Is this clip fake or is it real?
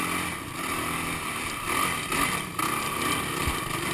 real